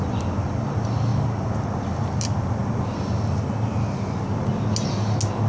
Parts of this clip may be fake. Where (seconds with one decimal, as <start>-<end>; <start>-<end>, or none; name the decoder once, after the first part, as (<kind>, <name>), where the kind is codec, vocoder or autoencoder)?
none